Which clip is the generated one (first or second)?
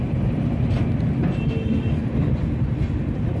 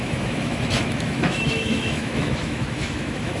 second